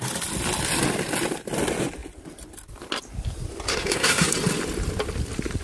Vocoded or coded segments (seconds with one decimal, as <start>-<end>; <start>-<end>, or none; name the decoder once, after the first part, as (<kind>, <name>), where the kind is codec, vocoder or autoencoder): 3.7-4.3 (codec, SNAC)